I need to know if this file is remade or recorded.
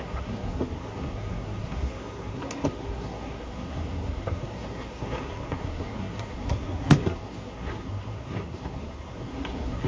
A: remade